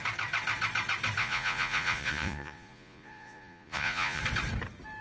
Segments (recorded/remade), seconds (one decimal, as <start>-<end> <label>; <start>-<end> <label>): 0.0-1.2 recorded; 1.2-4.2 remade; 4.2-5.0 recorded